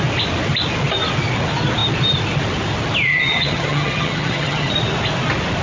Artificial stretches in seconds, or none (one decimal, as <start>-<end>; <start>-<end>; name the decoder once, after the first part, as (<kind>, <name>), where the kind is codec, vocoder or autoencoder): 3.1-4.7 (vocoder, HiFi-GAN)

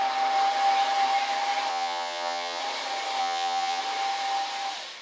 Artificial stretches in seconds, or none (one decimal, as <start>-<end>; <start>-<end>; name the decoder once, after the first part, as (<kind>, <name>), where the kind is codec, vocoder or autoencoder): 1.7-2.6 (vocoder, HiFi-GAN); 3.2-3.8

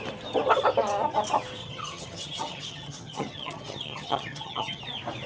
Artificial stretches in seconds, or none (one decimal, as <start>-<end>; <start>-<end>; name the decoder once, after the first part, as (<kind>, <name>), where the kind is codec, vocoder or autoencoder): 1.6-4.8 (vocoder, HiFi-GAN)

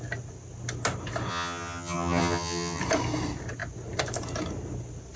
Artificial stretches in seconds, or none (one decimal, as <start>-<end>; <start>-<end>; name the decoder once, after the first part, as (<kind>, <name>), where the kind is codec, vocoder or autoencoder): 1.3-2.8 (vocoder, HiFi-GAN)

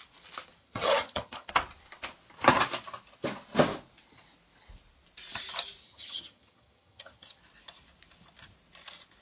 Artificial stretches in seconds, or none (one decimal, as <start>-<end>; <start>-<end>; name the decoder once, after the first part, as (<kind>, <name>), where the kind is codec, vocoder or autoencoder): 0.6-1.5 (vocoder, HiFi-GAN); 5.8-7.4

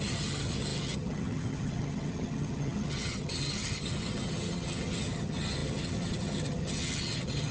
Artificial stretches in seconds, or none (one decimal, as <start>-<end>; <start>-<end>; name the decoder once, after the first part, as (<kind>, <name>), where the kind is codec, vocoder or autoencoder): 0.0-7.5 (vocoder, HiFi-GAN)

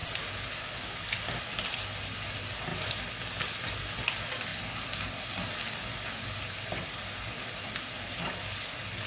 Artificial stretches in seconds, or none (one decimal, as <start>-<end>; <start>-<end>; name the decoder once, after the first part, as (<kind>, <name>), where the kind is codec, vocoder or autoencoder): none

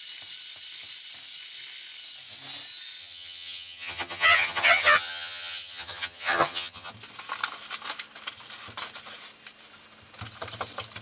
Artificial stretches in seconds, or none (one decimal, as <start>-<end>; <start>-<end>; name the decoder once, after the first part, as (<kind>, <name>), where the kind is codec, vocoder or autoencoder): 3.0-6.9 (vocoder, HiFi-GAN)